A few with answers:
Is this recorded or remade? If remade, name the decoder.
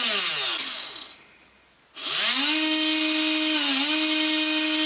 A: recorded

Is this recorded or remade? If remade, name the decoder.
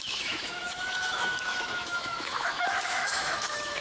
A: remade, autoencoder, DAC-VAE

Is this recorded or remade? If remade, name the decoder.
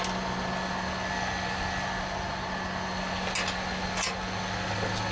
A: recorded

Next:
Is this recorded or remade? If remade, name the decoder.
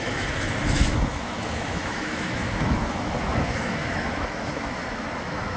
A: remade, autoencoder, DAC-VAE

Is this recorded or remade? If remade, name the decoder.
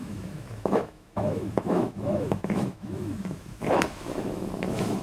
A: remade, autoencoder, DAC-VAE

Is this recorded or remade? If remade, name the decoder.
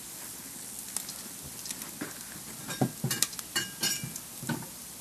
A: recorded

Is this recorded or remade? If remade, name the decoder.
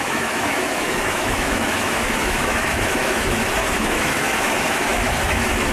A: remade, autoencoder, DAC-VAE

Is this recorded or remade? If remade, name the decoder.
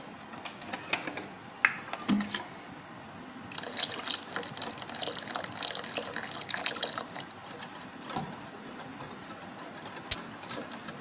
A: recorded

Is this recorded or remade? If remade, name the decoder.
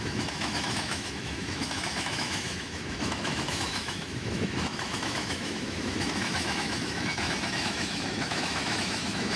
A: remade, autoencoder, DAC-VAE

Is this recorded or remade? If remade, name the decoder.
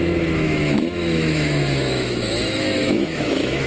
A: remade, autoencoder, DAC-VAE